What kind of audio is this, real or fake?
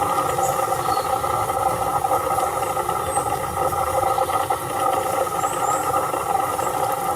real